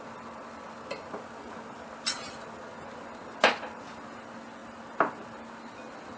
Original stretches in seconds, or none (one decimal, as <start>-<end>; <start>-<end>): 0.0-6.2